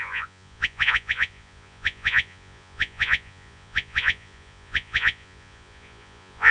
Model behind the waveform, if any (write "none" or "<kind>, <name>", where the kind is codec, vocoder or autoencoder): vocoder, Vocos